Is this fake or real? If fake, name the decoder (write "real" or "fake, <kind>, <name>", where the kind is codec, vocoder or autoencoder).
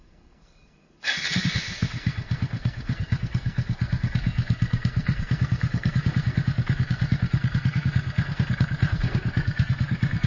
fake, codec, SNAC